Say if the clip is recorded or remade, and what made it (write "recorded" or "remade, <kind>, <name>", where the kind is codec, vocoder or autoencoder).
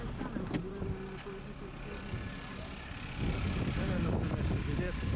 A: recorded